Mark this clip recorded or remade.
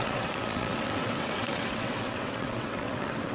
remade